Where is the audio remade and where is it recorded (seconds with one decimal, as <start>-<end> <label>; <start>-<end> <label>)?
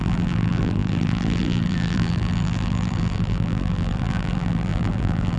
0.0-5.4 remade